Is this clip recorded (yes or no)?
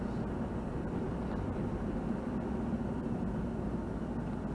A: yes